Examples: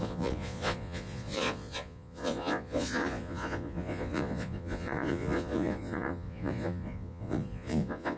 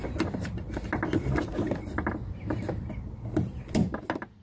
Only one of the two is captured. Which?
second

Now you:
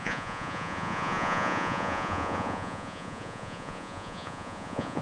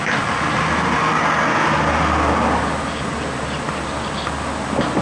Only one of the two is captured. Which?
second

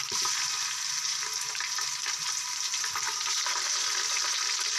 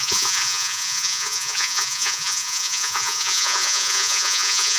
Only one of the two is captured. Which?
first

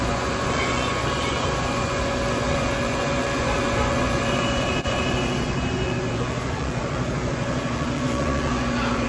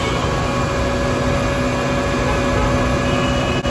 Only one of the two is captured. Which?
second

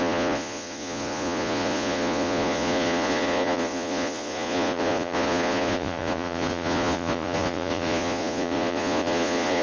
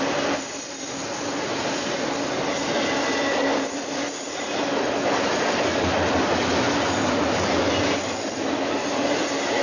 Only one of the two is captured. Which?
second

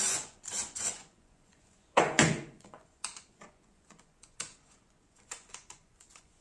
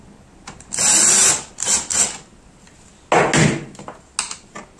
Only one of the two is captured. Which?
second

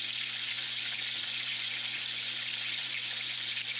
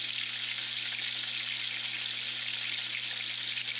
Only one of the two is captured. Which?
second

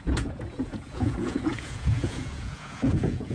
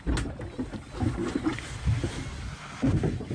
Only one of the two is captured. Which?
second